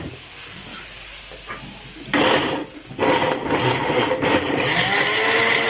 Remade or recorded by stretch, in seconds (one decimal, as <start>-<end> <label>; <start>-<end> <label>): 0.0-5.7 recorded